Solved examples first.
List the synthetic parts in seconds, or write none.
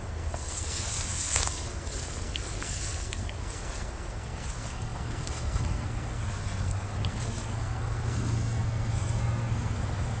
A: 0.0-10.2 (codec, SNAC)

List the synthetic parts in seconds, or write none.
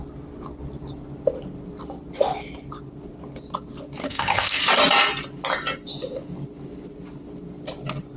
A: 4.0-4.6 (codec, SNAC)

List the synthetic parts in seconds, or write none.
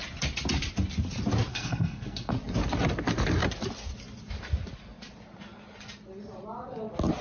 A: 1.5-2.3 (codec, SNAC)